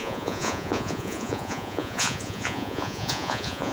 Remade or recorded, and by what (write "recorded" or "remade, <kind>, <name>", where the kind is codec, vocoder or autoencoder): remade, vocoder, Vocos